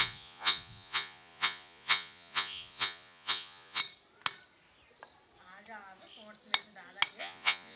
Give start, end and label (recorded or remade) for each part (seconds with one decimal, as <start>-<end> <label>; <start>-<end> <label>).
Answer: 0.0-3.8 remade; 3.8-7.2 recorded; 7.2-7.8 remade